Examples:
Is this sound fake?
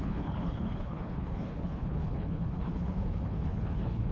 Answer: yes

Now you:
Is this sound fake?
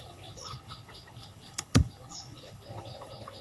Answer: yes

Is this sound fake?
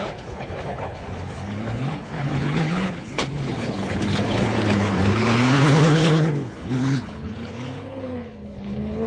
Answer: yes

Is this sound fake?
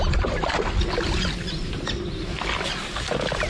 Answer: no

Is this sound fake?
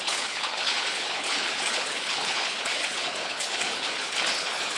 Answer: yes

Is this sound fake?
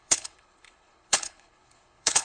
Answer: yes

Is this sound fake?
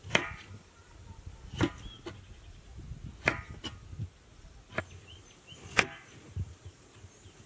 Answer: no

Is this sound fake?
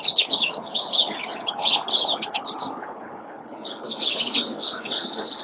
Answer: yes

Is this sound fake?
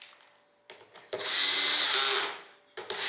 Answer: no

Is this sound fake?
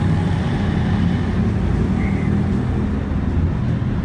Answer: no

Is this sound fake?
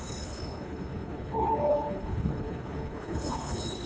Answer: yes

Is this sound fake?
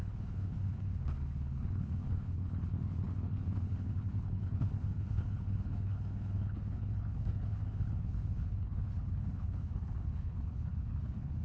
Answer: yes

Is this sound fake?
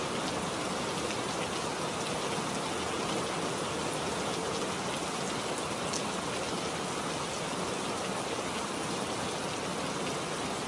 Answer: no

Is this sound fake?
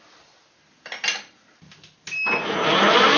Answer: no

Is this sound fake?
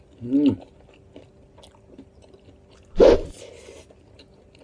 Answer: no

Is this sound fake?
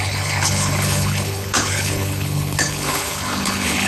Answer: yes